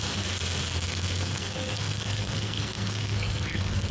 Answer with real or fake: fake